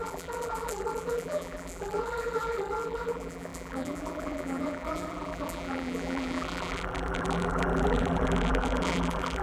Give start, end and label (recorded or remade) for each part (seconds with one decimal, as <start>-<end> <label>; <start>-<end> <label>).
0.0-9.4 remade